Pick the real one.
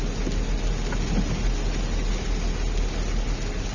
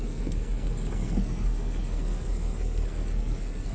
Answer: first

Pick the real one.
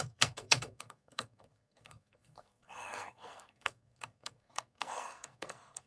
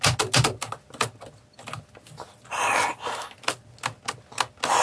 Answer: second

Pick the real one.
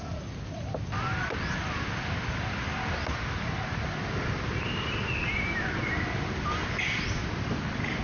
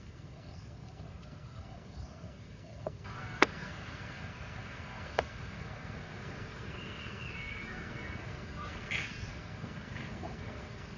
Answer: first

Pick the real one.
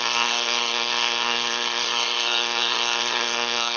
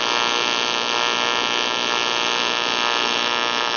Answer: second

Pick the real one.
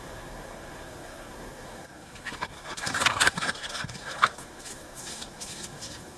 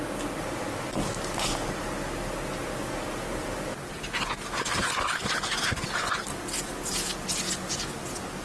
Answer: second